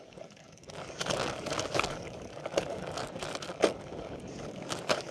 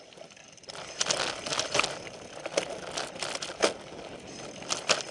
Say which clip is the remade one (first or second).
first